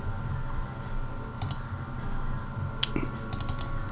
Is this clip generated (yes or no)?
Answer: no